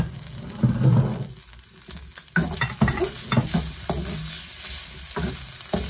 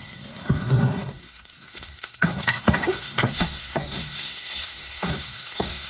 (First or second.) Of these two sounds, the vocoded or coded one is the second